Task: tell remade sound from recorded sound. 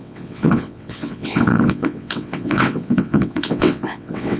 remade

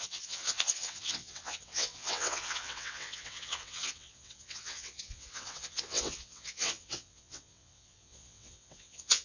remade